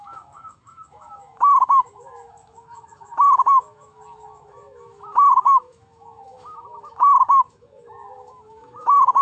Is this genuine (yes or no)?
no